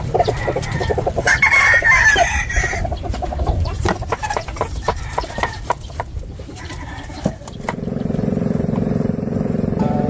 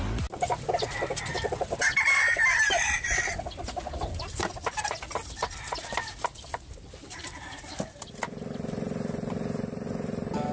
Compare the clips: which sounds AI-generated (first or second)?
first